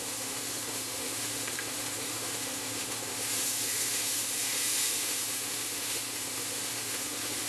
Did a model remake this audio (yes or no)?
yes